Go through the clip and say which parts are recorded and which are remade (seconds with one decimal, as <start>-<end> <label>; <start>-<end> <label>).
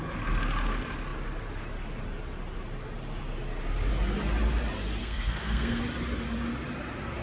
0.0-5.0 recorded; 5.0-5.8 remade; 5.8-7.2 recorded